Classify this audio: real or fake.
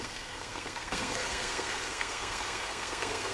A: fake